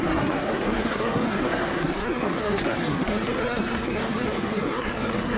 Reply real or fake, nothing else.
fake